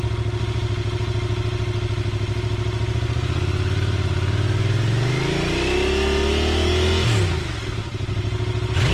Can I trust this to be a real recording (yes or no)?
yes